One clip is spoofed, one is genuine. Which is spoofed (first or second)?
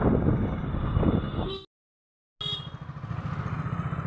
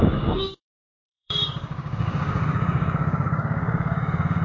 second